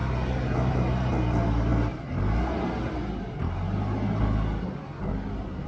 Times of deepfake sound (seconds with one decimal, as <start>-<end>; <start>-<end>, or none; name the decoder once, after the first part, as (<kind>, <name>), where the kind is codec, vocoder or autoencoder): none